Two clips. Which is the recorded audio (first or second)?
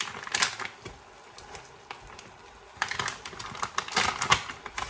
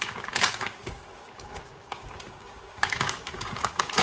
first